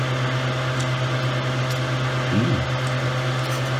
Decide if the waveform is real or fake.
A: real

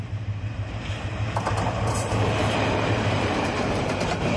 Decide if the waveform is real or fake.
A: fake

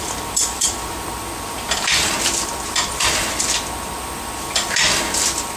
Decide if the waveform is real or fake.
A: fake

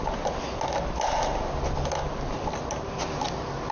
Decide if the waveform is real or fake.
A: real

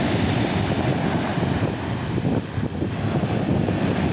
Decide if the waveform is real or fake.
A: fake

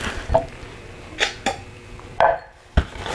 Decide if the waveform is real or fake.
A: fake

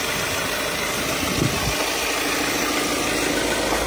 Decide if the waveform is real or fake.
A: real